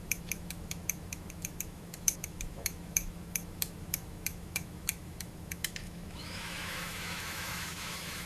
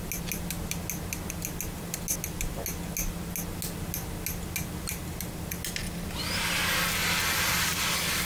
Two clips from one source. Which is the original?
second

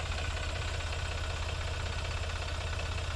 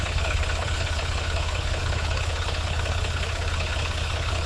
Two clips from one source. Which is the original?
first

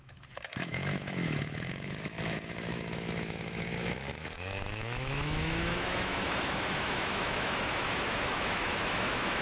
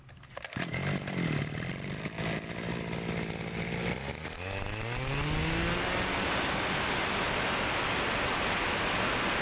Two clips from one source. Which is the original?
second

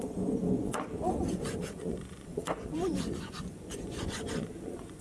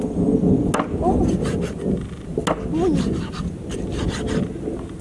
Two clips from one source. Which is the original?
second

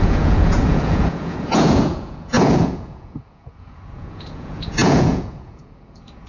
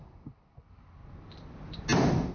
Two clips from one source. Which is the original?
second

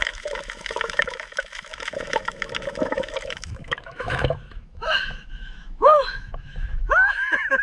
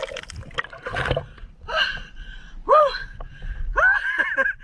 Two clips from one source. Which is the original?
second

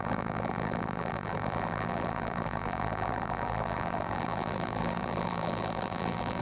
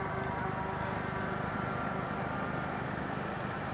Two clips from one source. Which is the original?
second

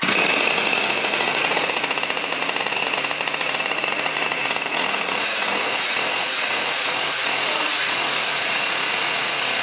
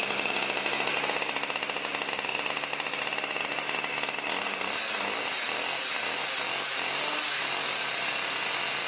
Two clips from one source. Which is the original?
second